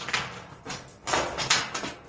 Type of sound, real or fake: real